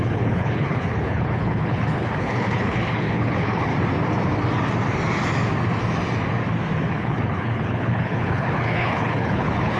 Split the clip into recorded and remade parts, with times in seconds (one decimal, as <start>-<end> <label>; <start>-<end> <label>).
0.0-3.7 remade; 3.7-6.9 recorded; 6.9-9.8 remade